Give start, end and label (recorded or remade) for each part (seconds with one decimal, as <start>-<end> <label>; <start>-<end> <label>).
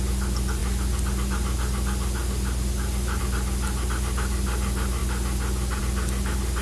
0.0-6.6 recorded